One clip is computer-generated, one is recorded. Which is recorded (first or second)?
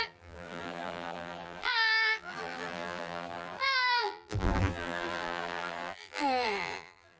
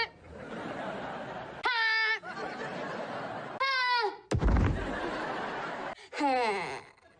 second